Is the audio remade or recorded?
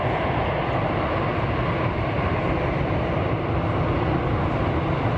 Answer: recorded